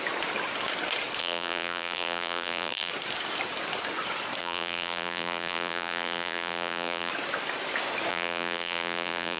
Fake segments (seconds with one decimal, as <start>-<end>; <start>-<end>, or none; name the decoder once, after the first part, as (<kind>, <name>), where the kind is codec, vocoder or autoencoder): 1.2-2.9 (vocoder, BigVGAN v2); 4.4-7.1; 8.1-9.4